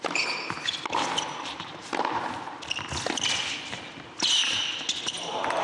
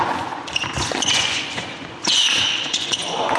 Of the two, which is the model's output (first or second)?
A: second